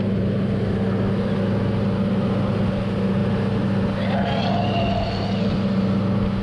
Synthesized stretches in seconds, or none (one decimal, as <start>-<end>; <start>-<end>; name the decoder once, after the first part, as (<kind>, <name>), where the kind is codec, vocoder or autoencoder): none